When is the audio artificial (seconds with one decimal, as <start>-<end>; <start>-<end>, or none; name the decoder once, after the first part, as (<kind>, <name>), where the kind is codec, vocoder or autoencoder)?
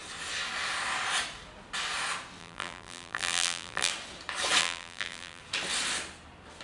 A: 2.4-3.9 (vocoder, BigVGAN v2); 4.6-5.4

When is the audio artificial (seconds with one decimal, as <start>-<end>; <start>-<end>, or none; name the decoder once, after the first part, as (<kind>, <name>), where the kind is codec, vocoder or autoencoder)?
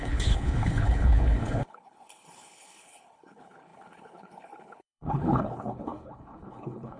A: 0.0-7.0 (codec, HILCodec)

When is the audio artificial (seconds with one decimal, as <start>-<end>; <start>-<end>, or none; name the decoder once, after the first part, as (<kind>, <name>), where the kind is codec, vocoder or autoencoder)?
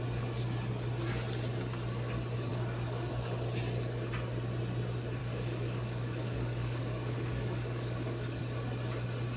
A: 2.5-3.1 (codec, DAC); 5.2-8.4